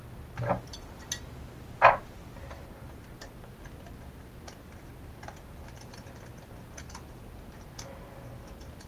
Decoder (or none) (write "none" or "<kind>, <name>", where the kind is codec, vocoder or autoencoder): none